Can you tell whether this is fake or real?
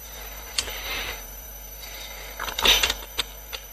fake